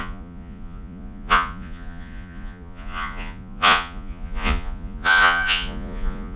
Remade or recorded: remade